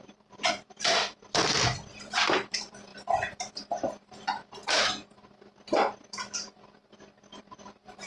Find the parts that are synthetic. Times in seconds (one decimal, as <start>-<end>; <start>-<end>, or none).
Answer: 0.0-4.6; 7.4-8.1